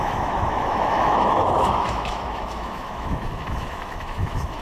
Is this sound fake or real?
fake